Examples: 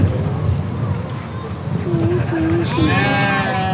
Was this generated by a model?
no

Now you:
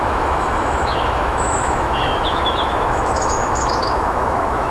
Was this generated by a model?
yes